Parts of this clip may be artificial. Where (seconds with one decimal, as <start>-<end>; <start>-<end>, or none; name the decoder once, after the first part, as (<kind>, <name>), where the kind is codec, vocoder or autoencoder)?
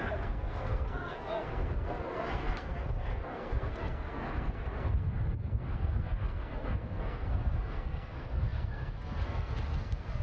0.0-10.2 (codec, SNAC)